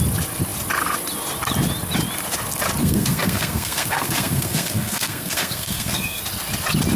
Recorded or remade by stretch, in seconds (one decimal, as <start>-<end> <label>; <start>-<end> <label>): 0.0-2.8 recorded; 2.8-6.2 remade; 6.2-7.0 recorded